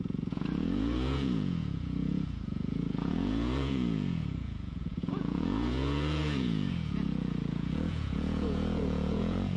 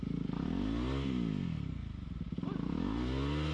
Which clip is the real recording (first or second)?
second